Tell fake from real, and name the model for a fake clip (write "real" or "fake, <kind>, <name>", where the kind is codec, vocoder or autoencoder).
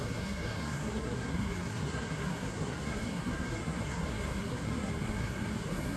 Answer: fake, codec, SNAC